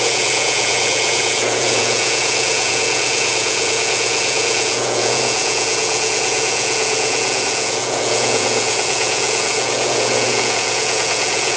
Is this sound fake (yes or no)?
yes